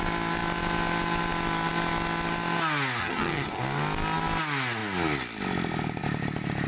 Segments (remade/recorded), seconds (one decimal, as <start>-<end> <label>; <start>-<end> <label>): 0.0-3.0 recorded; 3.0-3.6 remade; 3.6-6.7 recorded